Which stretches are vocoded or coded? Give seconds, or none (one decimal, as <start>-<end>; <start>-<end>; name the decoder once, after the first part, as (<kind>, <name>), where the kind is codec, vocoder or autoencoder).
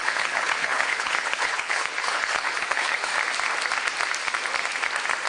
0.0-3.1 (codec, HILCodec)